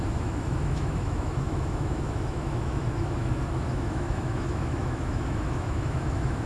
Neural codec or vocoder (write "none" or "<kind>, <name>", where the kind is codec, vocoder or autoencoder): autoencoder, DAC-VAE